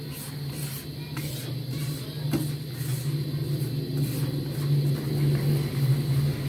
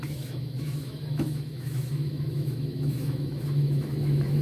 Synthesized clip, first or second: second